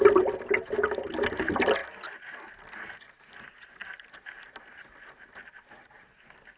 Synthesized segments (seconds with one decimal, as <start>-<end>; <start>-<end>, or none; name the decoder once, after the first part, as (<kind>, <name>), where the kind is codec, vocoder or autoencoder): none